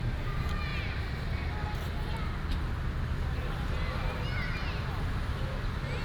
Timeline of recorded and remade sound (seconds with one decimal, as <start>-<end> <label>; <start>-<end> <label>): 0.0-6.0 recorded